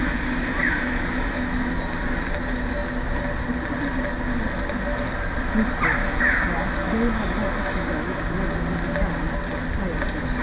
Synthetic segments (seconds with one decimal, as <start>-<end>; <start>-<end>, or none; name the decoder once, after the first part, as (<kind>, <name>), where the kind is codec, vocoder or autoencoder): 0.0-1.8 (autoencoder, DAC-VAE); 6.0-8.2

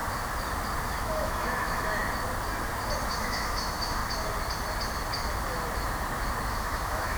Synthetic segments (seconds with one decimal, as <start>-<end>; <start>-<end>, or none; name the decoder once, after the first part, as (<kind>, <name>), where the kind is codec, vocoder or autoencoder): 1.0-2.0 (autoencoder, DAC-VAE); 3.1-4.0; 6.5-7.2

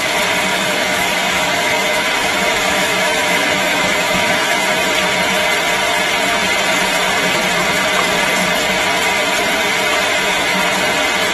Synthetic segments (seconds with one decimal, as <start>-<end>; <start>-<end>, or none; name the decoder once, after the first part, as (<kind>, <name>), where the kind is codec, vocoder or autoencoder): 0.5-4.9 (autoencoder, DAC-VAE); 9.9-10.6